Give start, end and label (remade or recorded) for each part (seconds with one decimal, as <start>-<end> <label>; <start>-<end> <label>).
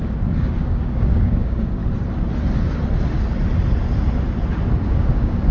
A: 0.0-1.8 remade; 1.8-4.9 recorded; 4.9-5.5 remade